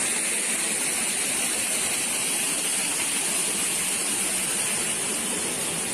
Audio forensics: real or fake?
real